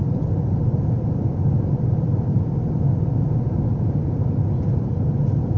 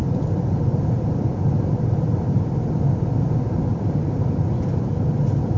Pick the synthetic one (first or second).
second